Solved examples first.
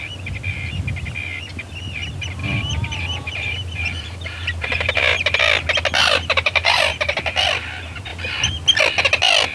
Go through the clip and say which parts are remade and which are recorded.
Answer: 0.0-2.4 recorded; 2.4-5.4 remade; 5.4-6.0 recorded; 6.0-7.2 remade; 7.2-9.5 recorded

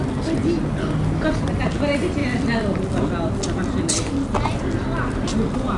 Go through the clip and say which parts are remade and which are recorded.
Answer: 0.0-5.8 recorded